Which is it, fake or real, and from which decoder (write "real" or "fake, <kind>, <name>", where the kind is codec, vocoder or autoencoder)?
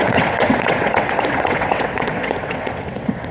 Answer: fake, vocoder, WaveNeXt